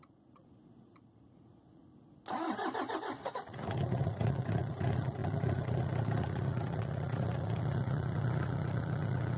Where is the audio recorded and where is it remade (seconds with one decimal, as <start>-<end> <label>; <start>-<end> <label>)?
0.0-1.8 remade; 1.8-3.2 recorded; 3.2-9.4 remade